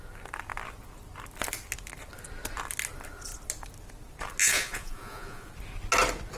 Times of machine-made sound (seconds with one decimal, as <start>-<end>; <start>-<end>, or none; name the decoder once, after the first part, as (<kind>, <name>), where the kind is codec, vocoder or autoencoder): 4.4-5.5 (vocoder, Vocos)